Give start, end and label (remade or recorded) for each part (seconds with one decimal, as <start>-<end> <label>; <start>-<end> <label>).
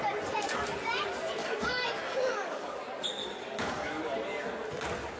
0.0-1.4 recorded; 1.4-2.8 remade; 2.8-3.2 recorded; 3.2-4.0 remade; 4.0-5.2 recorded